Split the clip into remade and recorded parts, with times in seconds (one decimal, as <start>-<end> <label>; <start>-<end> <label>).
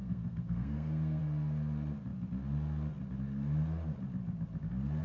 0.0-1.2 remade; 1.2-5.0 recorded